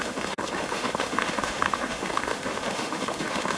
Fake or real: fake